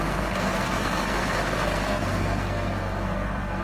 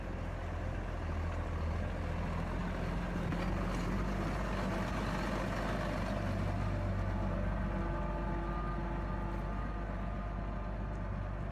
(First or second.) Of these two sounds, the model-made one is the first